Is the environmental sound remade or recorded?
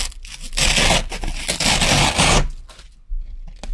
recorded